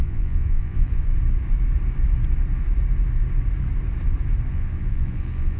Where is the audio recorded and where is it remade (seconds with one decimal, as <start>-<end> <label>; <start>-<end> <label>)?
0.0-1.1 remade; 1.1-4.5 recorded; 4.5-5.6 remade